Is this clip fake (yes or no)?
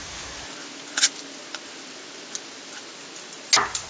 no